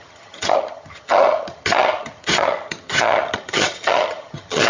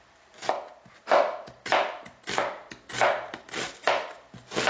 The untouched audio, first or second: second